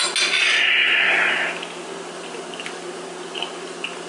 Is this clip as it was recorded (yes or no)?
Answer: yes